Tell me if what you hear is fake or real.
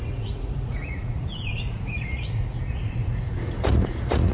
fake